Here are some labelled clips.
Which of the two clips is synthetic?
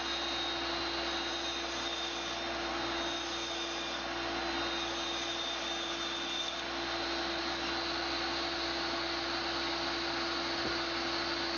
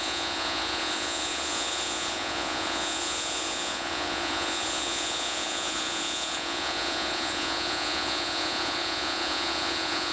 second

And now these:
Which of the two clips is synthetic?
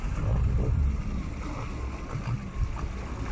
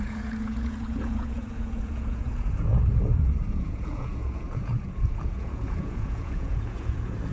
second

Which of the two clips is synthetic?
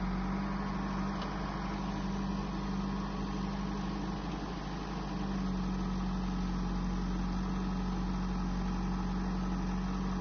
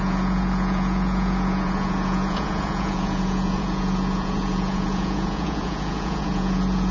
second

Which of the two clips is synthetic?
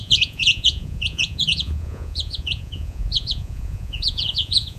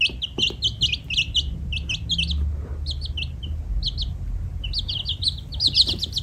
first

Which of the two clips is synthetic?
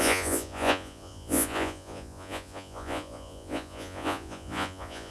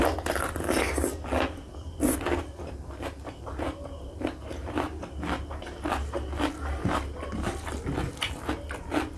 first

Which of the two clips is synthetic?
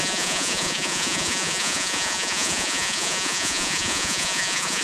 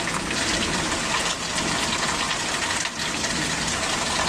first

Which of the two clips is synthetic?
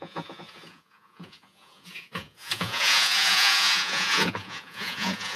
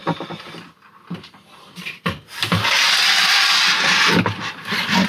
first